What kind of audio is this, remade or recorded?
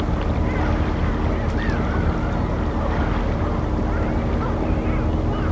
recorded